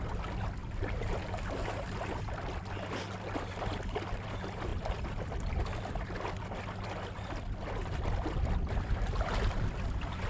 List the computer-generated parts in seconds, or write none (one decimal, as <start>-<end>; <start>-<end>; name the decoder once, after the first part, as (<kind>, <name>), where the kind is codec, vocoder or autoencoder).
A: 0.6-1.4 (vocoder, BigVGAN v2)